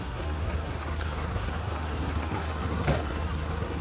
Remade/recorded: remade